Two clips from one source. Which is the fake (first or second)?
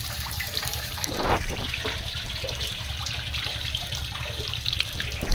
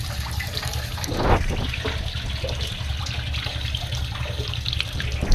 first